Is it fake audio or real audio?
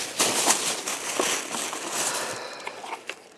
real